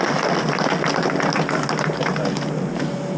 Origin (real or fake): real